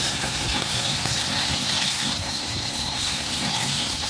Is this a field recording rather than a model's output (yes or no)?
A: no